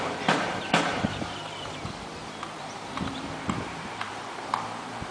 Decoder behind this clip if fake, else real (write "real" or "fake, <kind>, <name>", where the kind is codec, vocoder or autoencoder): fake, vocoder, BigVGAN v2